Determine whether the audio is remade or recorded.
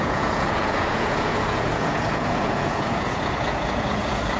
remade